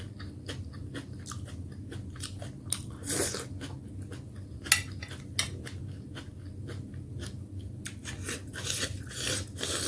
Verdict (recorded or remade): recorded